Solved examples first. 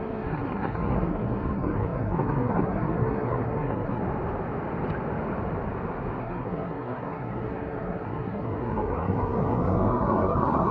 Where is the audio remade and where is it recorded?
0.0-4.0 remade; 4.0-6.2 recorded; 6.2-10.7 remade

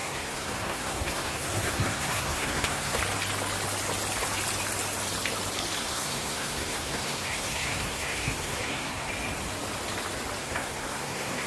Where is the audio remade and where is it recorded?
0.0-3.0 remade; 3.0-5.8 recorded; 5.8-9.1 remade; 9.1-10.4 recorded; 10.4-11.5 remade

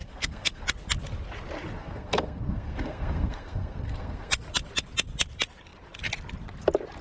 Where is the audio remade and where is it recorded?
0.0-0.6 remade; 0.6-1.8 recorded; 1.8-4.3 remade; 4.3-7.0 recorded